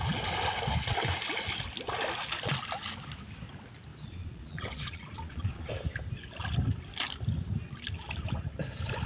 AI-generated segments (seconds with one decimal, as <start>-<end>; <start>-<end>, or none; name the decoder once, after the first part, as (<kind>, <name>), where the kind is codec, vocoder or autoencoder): 3.9-5.7 (vocoder, Vocos)

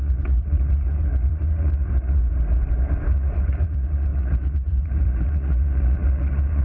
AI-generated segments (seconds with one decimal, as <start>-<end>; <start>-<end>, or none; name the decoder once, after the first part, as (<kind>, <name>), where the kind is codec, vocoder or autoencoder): 0.0-2.2 (vocoder, Vocos); 3.1-6.6

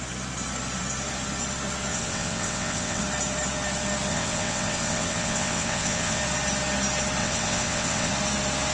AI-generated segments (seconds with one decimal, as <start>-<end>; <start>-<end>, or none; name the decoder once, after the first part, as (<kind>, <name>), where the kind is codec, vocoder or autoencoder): 1.9-3.0 (vocoder, WaveNeXt); 4.1-6.2; 7.2-8.1

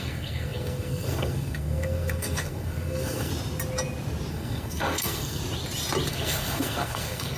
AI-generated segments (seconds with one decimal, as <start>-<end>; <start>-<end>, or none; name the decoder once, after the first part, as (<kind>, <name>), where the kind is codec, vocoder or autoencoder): 0.0-3.3 (codec, SNAC); 4.3-5.4; 6.1-7.4

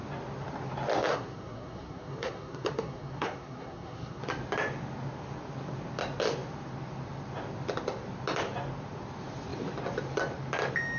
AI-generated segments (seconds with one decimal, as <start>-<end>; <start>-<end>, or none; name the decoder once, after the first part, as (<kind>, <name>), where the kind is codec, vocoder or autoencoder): 1.1-4.2 (codec, SNAC)

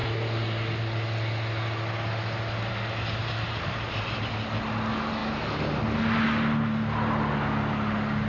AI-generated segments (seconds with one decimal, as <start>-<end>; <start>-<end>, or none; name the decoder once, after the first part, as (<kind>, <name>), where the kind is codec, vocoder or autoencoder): none

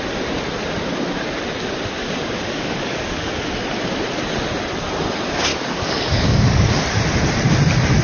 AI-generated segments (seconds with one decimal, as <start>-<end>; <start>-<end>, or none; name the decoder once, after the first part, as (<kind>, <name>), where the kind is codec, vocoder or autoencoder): 2.0-3.3 (codec, DAC); 5.5-6.7